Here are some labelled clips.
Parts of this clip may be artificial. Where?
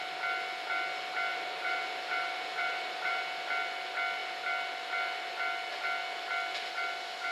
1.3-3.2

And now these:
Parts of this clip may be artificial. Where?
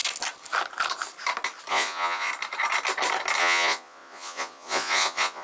1.7-2.3; 3.4-5.4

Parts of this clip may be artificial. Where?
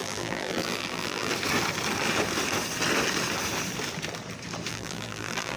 0.0-1.3; 4.7-5.6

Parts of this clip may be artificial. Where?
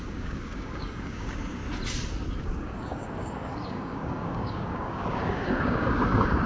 0.0-1.6; 2.4-6.5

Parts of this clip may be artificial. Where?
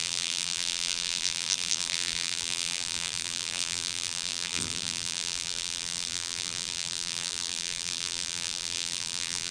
0.0-9.5